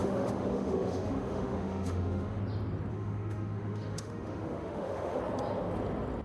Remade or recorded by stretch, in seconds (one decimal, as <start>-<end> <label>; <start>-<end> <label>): 0.0-2.4 remade; 2.4-2.9 recorded; 2.9-5.2 remade; 5.2-6.2 recorded